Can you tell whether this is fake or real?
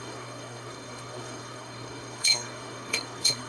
fake